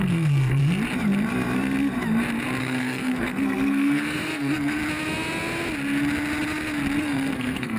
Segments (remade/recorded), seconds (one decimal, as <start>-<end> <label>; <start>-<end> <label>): 0.0-0.6 remade; 0.6-2.6 recorded; 2.6-4.8 remade; 4.8-7.0 recorded; 7.0-7.8 remade